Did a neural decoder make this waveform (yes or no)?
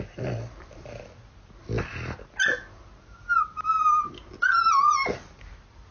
no